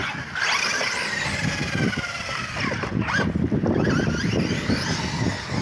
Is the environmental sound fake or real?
real